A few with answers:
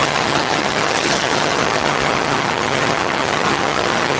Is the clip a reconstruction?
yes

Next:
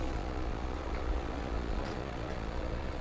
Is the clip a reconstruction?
yes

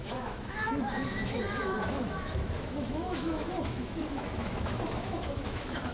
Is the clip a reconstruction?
yes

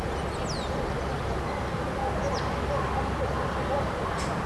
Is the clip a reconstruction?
no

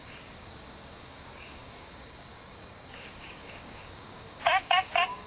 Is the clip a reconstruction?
yes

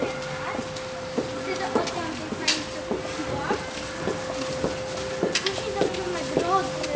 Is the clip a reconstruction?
no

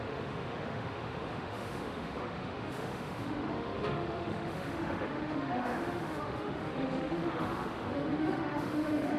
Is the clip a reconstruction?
yes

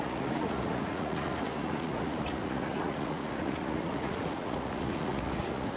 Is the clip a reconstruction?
yes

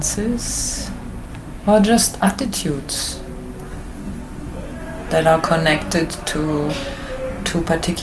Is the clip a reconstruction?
no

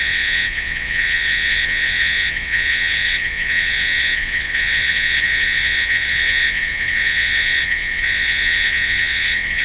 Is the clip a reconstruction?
yes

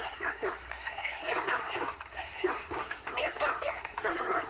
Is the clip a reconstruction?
yes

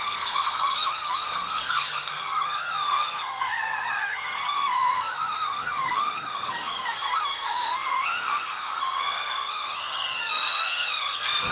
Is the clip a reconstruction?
yes